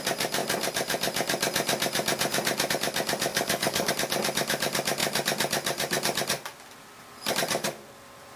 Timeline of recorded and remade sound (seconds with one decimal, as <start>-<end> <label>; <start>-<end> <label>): 0.0-3.3 recorded; 3.3-3.9 remade; 3.9-8.4 recorded